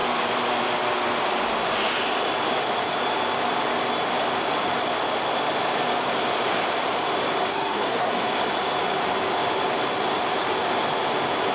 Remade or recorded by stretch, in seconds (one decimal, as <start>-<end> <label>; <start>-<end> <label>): 0.0-7.5 recorded; 7.5-8.1 remade; 8.1-11.5 recorded